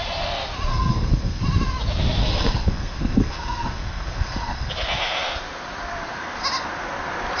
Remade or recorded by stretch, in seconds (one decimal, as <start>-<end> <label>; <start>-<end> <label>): 0.0-0.7 recorded; 0.7-1.4 remade; 1.4-2.2 recorded; 2.2-4.7 remade; 4.7-7.4 recorded